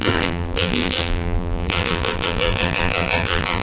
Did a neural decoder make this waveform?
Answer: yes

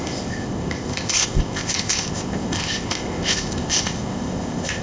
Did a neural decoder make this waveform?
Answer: yes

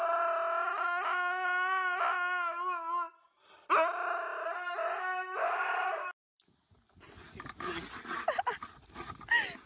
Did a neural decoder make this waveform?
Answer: no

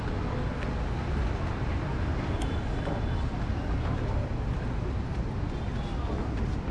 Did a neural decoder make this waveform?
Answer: no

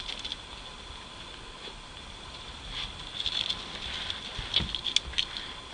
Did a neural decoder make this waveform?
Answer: no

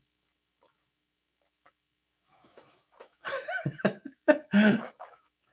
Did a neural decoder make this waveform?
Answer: yes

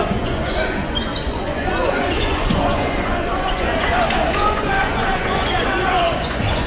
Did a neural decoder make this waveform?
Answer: yes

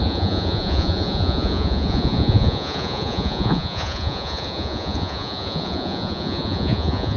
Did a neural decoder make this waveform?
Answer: yes